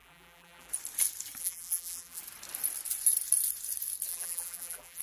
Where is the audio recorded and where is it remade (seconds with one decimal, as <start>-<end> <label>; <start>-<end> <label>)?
0.0-0.7 remade; 0.7-1.4 recorded; 1.4-2.2 remade; 2.2-4.1 recorded; 4.1-5.0 remade